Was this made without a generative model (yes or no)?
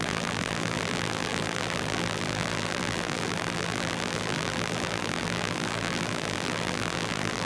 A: no